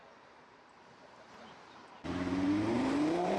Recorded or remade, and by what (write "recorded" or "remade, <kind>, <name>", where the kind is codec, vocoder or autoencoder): remade, vocoder, BigVGAN v2